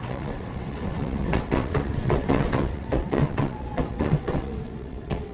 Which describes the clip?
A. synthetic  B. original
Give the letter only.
A